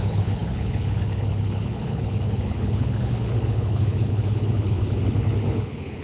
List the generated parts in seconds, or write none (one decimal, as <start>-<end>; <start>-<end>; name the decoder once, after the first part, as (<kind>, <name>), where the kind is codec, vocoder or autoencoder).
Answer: 0.0-6.0 (codec, HILCodec)